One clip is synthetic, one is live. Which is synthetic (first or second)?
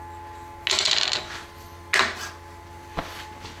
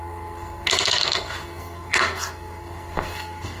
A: second